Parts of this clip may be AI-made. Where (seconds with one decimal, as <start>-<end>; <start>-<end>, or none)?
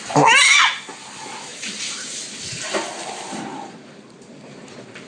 1.5-2.2